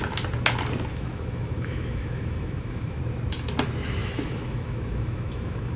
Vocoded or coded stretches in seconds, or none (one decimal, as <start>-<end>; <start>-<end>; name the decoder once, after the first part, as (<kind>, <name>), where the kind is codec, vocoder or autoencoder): 0.9-3.0 (autoencoder, DAC-VAE); 4.0-5.8